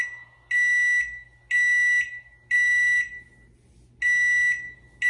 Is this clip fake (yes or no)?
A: no